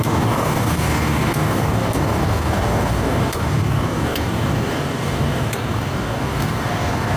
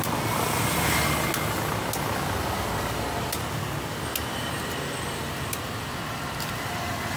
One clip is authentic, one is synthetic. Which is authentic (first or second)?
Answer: second